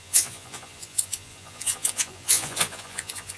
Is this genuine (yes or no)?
no